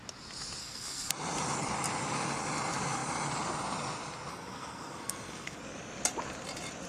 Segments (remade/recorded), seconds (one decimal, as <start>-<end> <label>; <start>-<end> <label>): 0.0-0.6 recorded; 0.6-1.1 remade; 1.1-4.3 recorded; 4.3-5.6 remade; 5.6-6.9 recorded